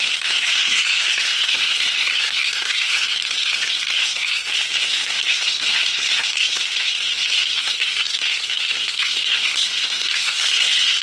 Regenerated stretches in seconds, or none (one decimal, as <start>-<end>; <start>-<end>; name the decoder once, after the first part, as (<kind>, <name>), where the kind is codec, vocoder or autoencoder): 0.0-11.0 (codec, SNAC)